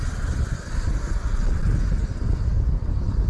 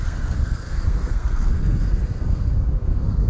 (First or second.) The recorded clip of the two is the first